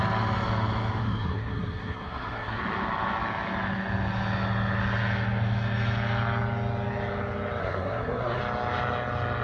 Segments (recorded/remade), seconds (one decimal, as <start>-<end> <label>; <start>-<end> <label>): 0.0-1.0 recorded; 1.0-2.6 remade; 2.6-7.6 recorded; 7.6-8.4 remade; 8.4-9.4 recorded